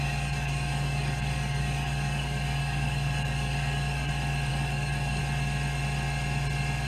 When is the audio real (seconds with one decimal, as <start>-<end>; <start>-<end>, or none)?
4.1-4.5; 5.2-6.9